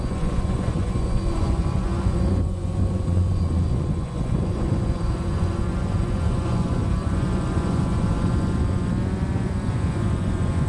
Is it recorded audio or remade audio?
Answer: remade